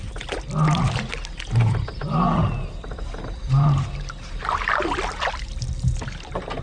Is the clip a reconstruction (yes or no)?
no